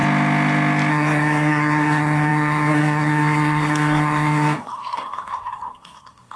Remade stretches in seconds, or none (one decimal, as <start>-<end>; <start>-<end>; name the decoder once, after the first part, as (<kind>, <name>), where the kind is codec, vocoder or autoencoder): 0.9-6.4 (codec, SNAC)